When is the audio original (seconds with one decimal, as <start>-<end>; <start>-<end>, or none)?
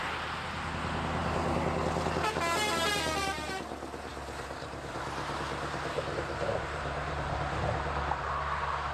0.0-4.1; 8.3-8.9